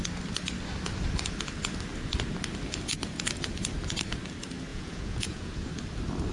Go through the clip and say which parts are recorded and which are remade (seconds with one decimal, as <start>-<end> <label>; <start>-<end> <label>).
0.0-4.7 recorded; 4.7-5.7 remade; 5.7-6.3 recorded